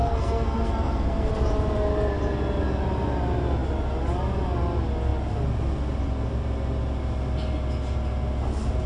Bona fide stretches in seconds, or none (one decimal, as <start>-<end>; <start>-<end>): 1.3-8.9